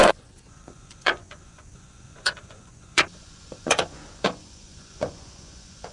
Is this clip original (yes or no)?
no